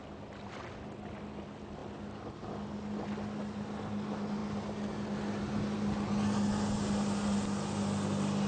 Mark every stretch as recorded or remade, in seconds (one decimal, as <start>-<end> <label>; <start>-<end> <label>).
0.0-8.5 recorded